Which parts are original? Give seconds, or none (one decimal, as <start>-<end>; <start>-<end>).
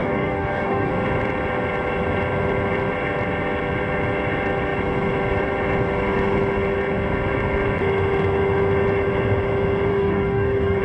0.9-9.9